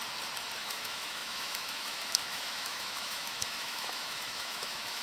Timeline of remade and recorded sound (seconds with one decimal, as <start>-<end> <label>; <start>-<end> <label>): 0.0-0.6 recorded; 0.6-5.0 remade